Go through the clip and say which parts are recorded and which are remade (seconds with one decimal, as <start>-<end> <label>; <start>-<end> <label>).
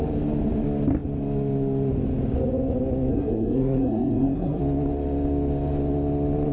0.0-3.1 recorded; 3.1-4.6 remade; 4.6-6.5 recorded